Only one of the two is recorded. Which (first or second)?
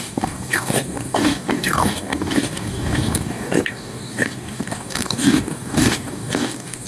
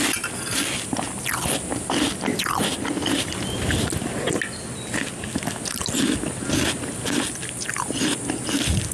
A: second